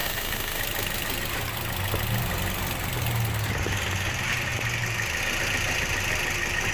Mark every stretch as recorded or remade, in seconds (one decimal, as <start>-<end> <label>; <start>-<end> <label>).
0.0-0.6 remade; 0.6-6.7 recorded